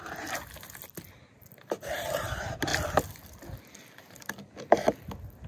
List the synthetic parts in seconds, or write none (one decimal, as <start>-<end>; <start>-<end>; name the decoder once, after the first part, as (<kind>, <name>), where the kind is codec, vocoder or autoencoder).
none